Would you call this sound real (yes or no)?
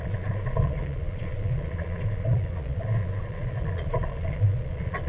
no